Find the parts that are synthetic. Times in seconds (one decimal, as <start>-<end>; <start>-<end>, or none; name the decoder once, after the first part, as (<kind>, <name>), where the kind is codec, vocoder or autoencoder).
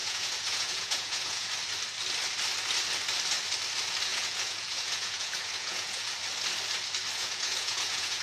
0.0-1.5 (vocoder, Vocos); 4.1-6.1; 7.2-8.2